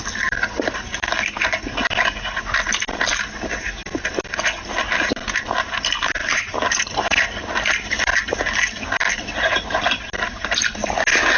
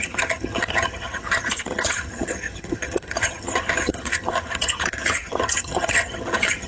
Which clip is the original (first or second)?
first